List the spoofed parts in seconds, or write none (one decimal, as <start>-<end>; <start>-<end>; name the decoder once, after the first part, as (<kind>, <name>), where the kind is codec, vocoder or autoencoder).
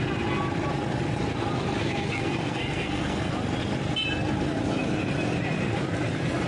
1.8-3.3 (codec, SNAC)